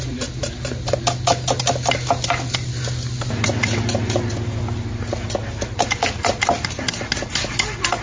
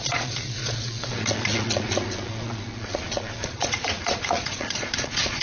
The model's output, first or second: second